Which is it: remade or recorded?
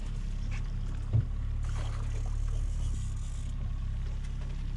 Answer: recorded